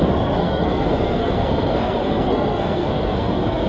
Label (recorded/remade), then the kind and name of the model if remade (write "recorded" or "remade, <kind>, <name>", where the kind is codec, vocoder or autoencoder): remade, codec, SNAC